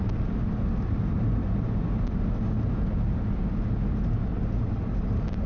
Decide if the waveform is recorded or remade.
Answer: recorded